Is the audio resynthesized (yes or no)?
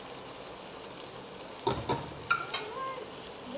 no